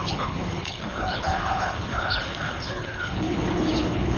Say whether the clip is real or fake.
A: fake